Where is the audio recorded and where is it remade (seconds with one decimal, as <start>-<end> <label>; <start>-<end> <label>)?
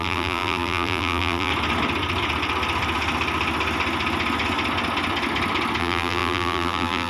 0.0-1.5 remade; 1.5-5.8 recorded; 5.8-7.1 remade